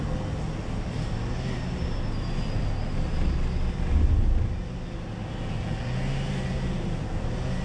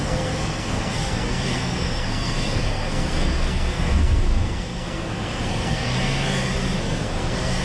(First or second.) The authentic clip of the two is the first